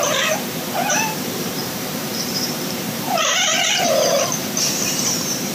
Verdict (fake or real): fake